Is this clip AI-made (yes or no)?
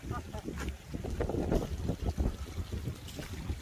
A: no